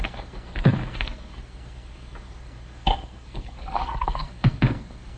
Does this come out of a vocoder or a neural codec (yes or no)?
yes